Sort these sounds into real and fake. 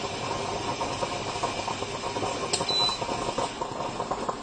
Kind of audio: real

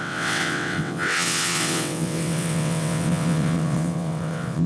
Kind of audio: fake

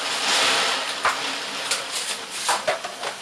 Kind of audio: fake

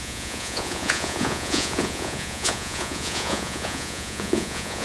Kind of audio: fake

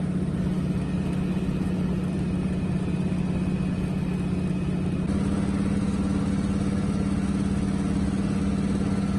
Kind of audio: real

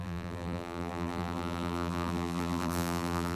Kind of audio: fake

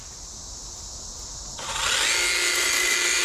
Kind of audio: real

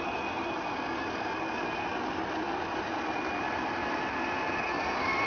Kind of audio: real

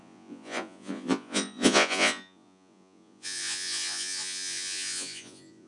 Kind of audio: fake